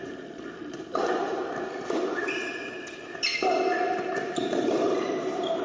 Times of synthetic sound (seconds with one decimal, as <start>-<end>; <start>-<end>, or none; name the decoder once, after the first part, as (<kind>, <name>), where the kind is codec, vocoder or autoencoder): 0.0-1.3 (vocoder, BigVGAN v2); 2.0-3.3; 4.0-5.6